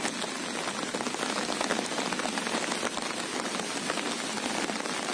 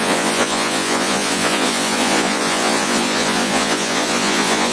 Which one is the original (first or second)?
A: first